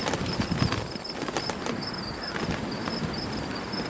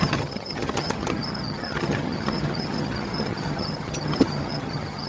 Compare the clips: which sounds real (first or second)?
first